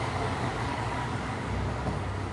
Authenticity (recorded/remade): remade